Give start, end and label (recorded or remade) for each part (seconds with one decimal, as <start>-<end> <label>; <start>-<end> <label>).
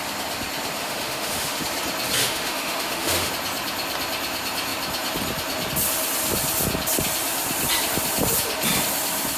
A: 0.0-0.8 recorded; 0.8-1.6 remade; 1.6-2.2 recorded; 2.2-3.3 remade; 3.3-9.4 recorded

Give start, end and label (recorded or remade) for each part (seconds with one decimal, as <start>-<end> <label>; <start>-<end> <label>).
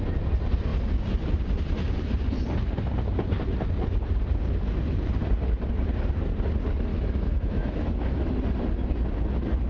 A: 0.0-6.9 recorded; 6.9-8.3 remade; 8.3-9.7 recorded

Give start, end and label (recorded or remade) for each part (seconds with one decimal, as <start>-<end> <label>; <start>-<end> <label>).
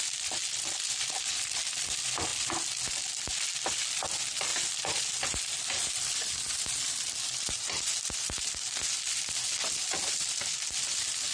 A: 0.0-11.3 recorded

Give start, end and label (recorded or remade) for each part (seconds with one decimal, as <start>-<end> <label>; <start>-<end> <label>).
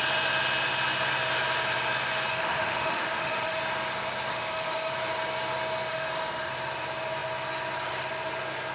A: 0.0-2.3 recorded; 2.3-3.6 remade; 3.6-4.3 recorded; 4.3-4.9 remade; 4.9-5.9 recorded; 5.9-6.5 remade; 6.5-8.7 recorded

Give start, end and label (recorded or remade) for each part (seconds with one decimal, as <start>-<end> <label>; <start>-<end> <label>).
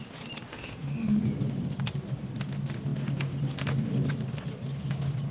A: 0.0-0.5 recorded; 0.5-1.2 remade; 1.2-5.3 recorded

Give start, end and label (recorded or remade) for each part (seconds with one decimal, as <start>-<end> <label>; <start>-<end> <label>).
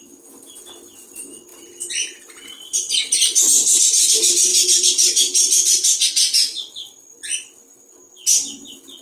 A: 0.0-9.0 recorded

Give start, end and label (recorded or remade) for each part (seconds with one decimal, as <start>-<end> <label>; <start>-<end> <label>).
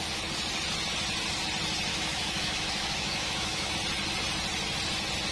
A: 0.0-1.9 recorded; 1.9-3.7 remade; 3.7-5.3 recorded